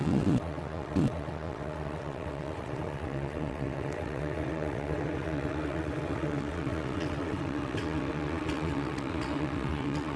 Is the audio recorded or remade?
remade